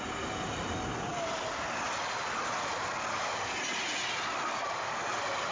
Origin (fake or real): real